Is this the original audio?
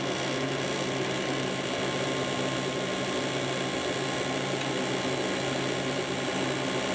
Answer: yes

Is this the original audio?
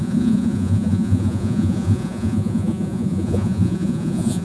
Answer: no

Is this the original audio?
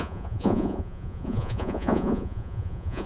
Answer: no